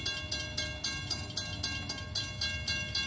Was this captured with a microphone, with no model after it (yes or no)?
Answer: yes